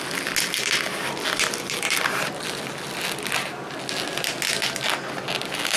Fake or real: real